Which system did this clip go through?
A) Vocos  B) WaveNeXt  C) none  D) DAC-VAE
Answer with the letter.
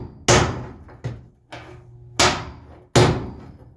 C